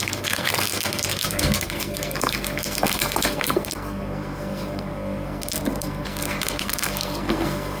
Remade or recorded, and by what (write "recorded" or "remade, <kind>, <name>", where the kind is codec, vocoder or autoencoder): remade, codec, SNAC